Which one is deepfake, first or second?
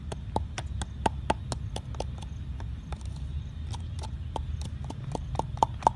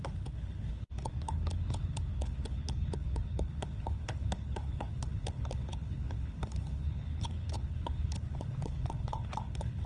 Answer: second